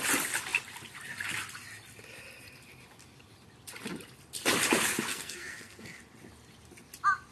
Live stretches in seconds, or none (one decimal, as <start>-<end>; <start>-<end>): 0.0-5.1; 6.0-7.3